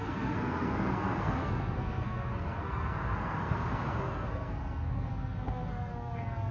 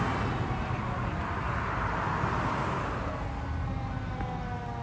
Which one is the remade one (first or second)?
first